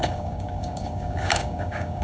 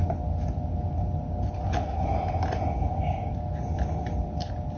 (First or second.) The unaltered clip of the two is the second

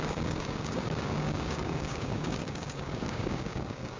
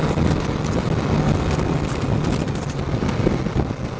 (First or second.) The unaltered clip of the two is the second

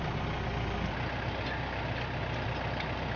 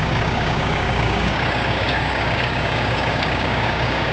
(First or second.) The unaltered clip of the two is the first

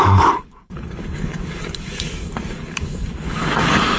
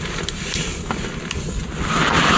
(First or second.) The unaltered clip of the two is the second